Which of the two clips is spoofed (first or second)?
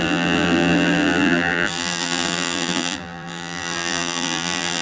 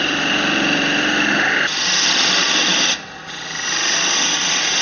first